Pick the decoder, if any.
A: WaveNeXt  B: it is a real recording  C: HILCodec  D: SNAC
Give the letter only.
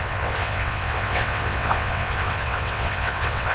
A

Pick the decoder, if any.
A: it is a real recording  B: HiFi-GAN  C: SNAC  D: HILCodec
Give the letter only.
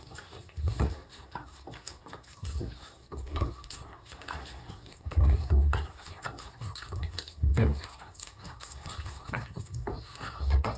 C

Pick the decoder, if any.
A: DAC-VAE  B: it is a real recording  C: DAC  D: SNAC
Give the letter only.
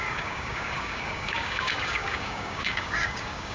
C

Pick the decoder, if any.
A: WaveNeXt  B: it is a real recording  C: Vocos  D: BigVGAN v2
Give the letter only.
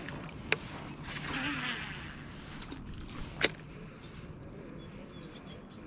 B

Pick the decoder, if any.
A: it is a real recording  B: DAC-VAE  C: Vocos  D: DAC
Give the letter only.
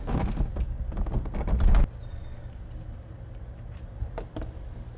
A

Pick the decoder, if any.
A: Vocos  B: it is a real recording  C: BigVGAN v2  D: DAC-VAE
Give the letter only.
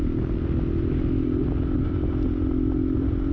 B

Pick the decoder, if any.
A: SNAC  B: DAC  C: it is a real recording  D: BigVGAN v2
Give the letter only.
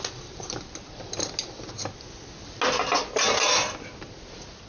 C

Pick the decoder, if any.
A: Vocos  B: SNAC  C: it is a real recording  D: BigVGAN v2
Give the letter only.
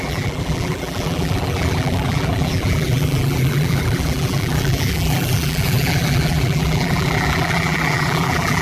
D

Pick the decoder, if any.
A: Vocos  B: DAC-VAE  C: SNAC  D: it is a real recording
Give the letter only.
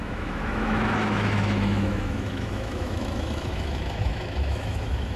B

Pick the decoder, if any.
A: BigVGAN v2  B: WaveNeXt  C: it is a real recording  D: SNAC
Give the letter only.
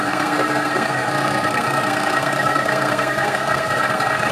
D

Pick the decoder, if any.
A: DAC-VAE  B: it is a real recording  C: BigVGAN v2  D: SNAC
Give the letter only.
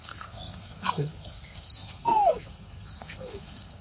D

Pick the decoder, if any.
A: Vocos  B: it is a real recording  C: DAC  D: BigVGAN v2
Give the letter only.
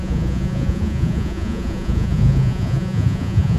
A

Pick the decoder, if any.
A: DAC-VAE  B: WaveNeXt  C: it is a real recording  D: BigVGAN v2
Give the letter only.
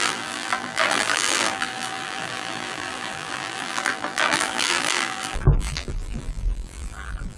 D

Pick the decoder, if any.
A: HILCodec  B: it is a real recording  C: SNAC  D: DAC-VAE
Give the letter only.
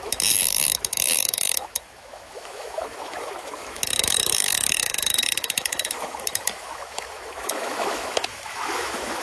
D